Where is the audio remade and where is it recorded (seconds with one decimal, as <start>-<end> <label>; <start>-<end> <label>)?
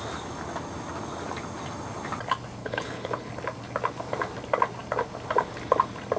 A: 0.0-2.6 recorded; 2.6-3.3 remade; 3.3-6.2 recorded